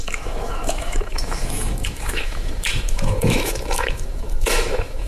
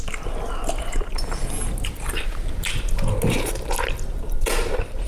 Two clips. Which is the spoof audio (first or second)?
first